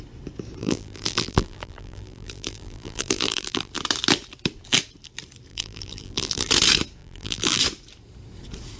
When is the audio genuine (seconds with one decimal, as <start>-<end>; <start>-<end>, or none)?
0.0-0.6; 3.7-5.5; 6.5-7.0; 7.6-8.8